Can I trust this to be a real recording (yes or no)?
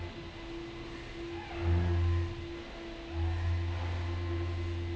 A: yes